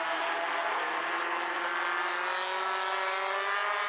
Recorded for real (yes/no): yes